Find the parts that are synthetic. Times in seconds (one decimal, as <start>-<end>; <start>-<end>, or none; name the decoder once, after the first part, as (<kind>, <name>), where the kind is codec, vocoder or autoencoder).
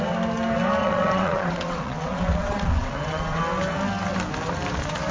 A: 0.8-3.4 (vocoder, WaveNeXt)